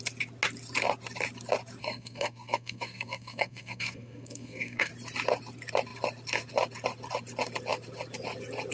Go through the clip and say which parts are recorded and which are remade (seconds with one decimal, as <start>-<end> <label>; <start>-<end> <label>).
0.0-1.8 recorded; 1.8-4.9 remade; 4.9-8.7 recorded